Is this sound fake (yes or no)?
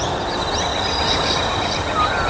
no